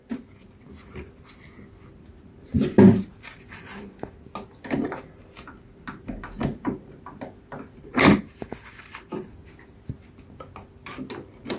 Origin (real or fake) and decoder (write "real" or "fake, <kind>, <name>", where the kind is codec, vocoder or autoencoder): real